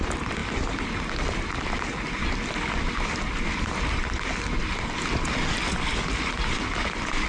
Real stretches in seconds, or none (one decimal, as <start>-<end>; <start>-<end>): 0.0-7.3